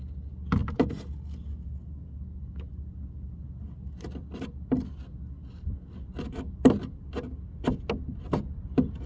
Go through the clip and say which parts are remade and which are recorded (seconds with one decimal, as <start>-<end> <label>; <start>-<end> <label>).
0.0-9.1 recorded